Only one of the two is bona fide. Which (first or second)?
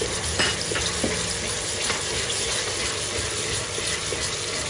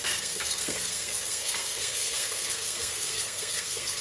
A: first